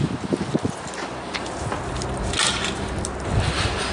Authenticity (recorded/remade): recorded